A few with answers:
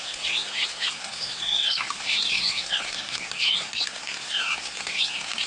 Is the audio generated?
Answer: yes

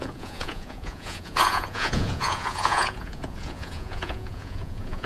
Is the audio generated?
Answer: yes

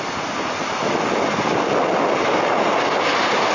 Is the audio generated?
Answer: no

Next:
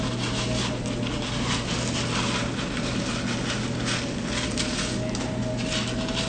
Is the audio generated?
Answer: no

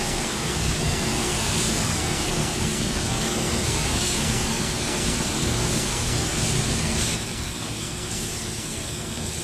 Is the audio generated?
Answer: yes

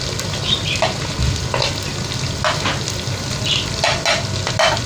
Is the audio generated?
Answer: no